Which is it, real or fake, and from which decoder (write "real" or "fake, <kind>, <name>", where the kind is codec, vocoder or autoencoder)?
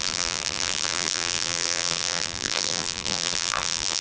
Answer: fake, vocoder, BigVGAN v2